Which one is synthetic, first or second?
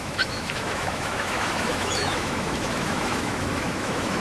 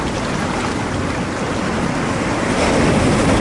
first